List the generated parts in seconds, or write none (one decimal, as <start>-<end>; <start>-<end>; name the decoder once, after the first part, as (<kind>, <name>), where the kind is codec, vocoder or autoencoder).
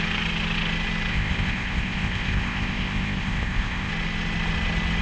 1.1-3.9 (codec, ZipCodec)